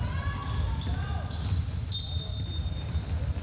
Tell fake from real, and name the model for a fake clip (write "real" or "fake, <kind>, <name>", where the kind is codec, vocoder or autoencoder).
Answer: real